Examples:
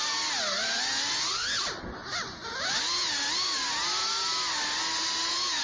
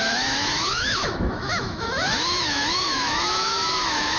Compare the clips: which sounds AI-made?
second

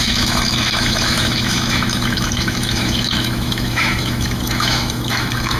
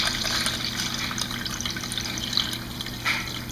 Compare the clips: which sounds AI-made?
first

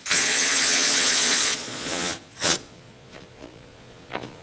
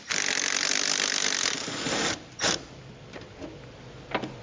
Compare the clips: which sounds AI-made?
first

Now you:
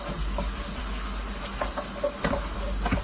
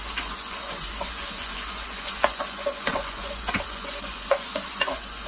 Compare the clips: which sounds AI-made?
second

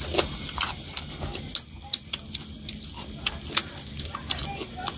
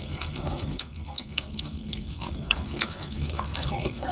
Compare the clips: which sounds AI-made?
second